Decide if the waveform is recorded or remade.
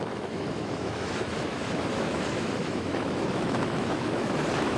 remade